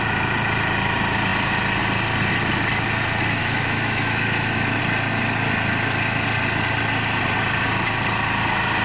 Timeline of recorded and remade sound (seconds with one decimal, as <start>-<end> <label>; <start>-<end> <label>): 0.0-3.4 recorded; 3.4-4.8 remade; 4.8-8.8 recorded